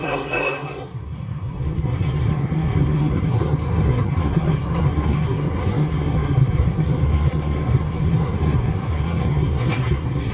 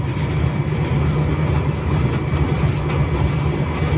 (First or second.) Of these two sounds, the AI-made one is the first